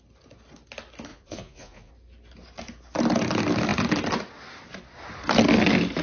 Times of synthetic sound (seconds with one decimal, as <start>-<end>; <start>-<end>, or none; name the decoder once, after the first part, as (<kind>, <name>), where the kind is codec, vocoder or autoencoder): 1.1-1.9 (vocoder, Vocos)